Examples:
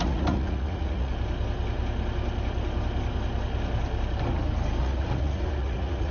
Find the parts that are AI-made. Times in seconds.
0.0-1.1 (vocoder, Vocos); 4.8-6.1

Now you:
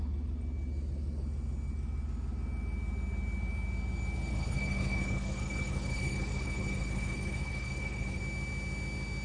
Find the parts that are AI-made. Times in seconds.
4.3-8.2 (codec, HILCodec)

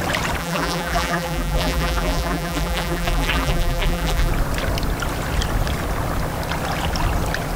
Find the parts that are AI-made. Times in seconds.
0.4-4.3 (vocoder, BigVGAN v2)

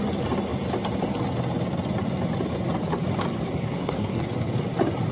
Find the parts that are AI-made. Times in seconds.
3.6-4.2 (codec, SNAC)

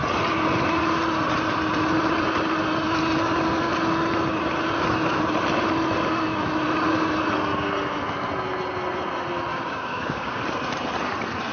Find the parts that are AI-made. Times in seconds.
9.5-10.4 (codec, DAC)

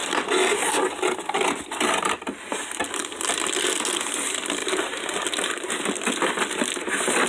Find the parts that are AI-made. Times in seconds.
0.0-2.9 (vocoder, BigVGAN v2); 4.6-5.7

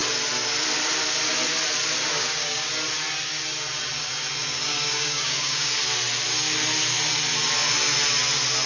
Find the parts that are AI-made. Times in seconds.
2.1-2.7 (codec, DAC); 4.4-5.8

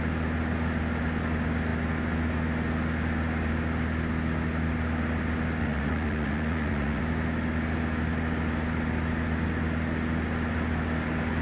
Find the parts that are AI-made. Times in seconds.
5.6-7.0 (vocoder, Vocos)